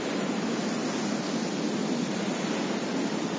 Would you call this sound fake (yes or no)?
no